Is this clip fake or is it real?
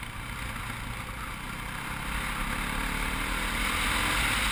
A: real